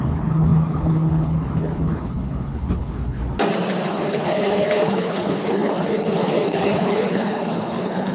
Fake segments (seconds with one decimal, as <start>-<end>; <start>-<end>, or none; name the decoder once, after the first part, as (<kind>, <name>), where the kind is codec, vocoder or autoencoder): 0.0-3.2 (codec, HILCodec); 3.9-8.1